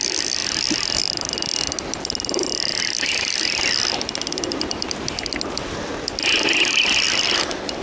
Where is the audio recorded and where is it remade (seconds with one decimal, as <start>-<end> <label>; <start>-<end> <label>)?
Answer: 0.0-7.8 recorded